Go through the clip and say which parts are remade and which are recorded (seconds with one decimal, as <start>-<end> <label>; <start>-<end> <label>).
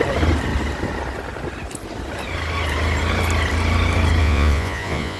0.0-4.2 recorded; 4.2-5.2 remade